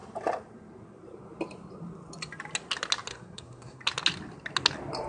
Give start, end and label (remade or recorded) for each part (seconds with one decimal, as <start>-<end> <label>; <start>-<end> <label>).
0.0-3.1 recorded; 3.1-3.8 remade; 3.8-5.1 recorded